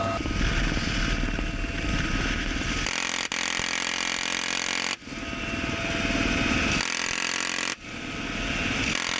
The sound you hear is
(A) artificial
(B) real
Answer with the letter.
B